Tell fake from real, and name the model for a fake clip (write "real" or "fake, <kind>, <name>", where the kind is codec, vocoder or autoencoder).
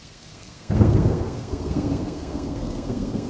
fake, codec, SNAC